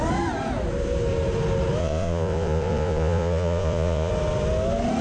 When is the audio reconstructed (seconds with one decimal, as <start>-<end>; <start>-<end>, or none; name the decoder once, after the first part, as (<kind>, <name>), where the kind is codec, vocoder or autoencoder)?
1.8-4.1 (vocoder, Vocos)